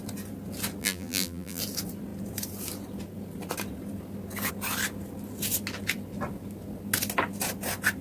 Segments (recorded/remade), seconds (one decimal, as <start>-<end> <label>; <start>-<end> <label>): 0.0-0.8 recorded; 0.8-1.6 remade; 1.6-8.0 recorded